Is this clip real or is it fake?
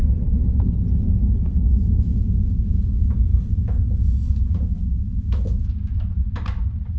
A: real